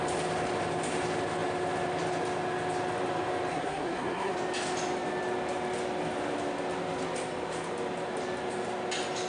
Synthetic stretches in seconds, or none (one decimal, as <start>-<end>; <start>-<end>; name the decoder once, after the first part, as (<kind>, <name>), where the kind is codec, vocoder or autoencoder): 3.5-4.3 (codec, SNAC)